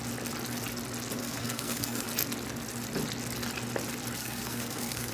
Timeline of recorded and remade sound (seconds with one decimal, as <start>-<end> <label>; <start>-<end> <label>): 0.0-1.2 recorded; 1.2-2.1 remade; 2.1-4.2 recorded; 4.2-5.1 remade